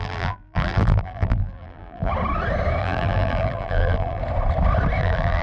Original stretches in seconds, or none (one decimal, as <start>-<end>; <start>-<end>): 2.1-2.8; 4.2-5.0